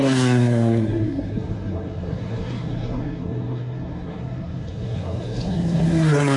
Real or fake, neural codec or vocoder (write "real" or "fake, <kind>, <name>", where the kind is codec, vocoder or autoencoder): fake, codec, SNAC